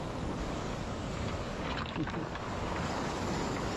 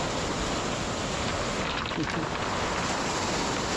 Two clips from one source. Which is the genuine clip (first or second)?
second